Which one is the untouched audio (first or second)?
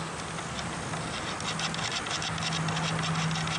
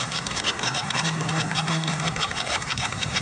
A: first